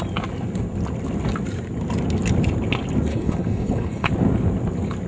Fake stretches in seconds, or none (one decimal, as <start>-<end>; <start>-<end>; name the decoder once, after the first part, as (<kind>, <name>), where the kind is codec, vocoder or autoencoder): 3.1-4.1 (codec, HILCodec)